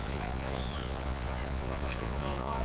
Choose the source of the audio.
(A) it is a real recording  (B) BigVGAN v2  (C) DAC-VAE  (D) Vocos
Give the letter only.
D